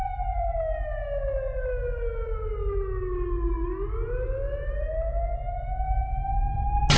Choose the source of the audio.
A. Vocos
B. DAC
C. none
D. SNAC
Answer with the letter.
C